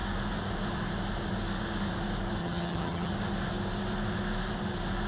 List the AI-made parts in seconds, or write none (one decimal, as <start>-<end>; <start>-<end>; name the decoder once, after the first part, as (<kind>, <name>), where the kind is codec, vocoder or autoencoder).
2.4-3.1 (vocoder, HiFi-GAN)